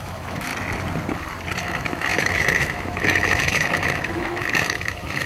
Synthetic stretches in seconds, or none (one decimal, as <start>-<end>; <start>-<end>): 0.0-0.5; 1.6-5.3